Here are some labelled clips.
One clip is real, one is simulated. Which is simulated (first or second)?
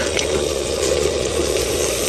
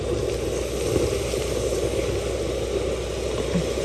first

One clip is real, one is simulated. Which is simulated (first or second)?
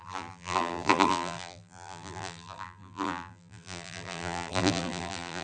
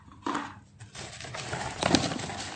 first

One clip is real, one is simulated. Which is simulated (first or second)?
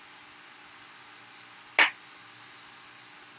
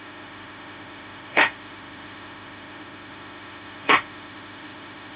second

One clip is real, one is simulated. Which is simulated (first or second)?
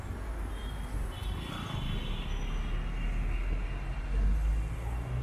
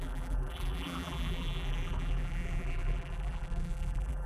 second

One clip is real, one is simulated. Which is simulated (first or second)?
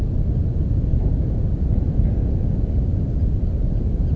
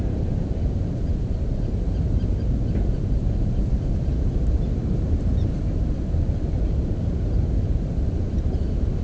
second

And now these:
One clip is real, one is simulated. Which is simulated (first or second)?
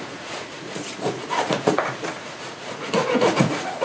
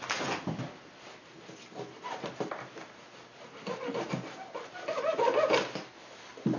first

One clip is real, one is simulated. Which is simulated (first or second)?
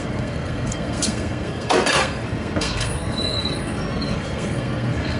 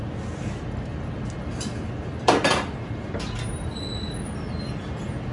first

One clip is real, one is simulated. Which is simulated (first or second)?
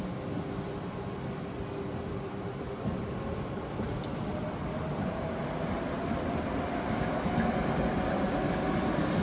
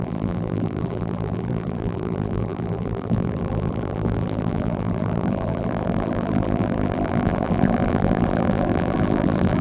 second